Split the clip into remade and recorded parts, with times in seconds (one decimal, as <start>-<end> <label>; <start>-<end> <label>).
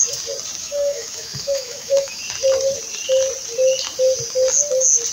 0.0-0.6 recorded; 0.6-2.2 remade; 2.2-5.1 recorded